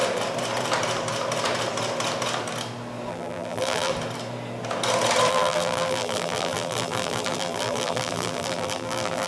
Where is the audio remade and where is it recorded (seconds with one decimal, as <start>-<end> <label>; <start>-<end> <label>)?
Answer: 0.0-3.1 recorded; 3.1-3.9 remade; 3.9-5.3 recorded; 5.3-9.3 remade